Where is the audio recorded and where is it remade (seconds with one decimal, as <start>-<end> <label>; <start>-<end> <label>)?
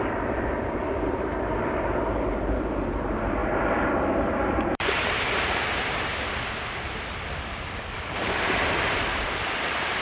0.0-6.1 remade; 6.1-7.7 recorded; 7.7-10.0 remade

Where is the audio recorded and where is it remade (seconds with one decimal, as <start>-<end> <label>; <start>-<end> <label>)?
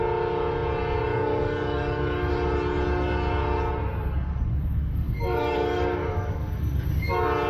0.0-1.1 recorded; 1.1-2.3 remade; 2.3-4.7 recorded; 4.7-6.9 remade; 6.9-7.5 recorded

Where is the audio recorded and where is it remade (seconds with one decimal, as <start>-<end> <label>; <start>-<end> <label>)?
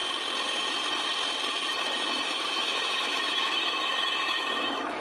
0.0-2.3 recorded; 2.3-5.0 remade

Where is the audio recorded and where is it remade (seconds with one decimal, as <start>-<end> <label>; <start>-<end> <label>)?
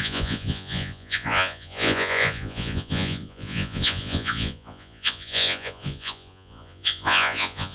0.0-7.7 remade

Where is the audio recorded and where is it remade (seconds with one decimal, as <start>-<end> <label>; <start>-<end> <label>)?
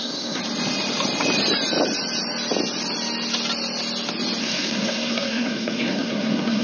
0.0-0.4 remade; 0.4-4.4 recorded; 4.4-6.6 remade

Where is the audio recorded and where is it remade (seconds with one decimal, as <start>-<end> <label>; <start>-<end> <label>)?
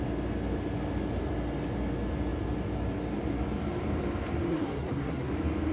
0.0-4.5 recorded; 4.5-5.3 remade; 5.3-5.7 recorded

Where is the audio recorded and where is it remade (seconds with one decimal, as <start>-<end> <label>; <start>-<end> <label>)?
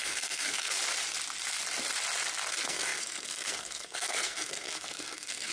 0.0-0.8 remade; 0.8-2.5 recorded; 2.5-5.5 remade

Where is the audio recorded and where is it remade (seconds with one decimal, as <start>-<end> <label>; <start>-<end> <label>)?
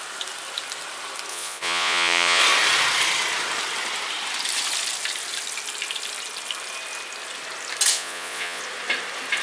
0.0-1.3 recorded; 1.3-2.4 remade; 2.4-7.9 recorded; 7.9-8.6 remade; 8.6-9.4 recorded